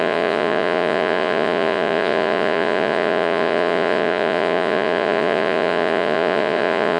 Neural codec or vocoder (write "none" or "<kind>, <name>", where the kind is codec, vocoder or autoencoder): vocoder, Vocos